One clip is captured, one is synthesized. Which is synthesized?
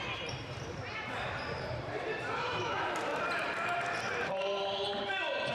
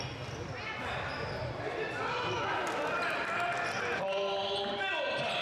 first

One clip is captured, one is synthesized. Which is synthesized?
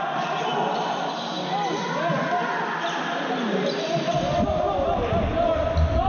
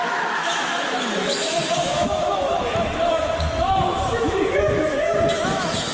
second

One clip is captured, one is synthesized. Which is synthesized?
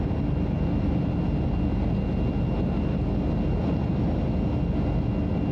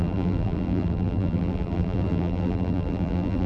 second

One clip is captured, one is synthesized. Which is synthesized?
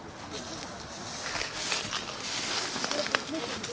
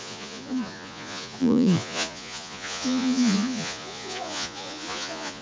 second